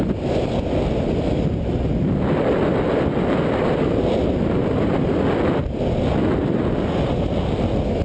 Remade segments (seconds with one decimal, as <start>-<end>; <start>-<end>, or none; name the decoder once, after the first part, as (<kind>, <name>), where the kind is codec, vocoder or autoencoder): 4.6-5.2 (vocoder, BigVGAN v2)